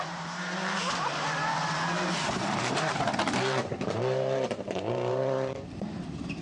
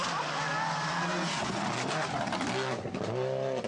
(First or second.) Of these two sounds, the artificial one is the first